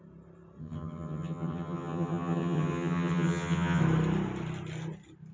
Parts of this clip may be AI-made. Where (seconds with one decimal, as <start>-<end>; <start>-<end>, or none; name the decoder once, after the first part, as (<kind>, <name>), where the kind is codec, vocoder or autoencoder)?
0.6-3.8 (vocoder, HiFi-GAN)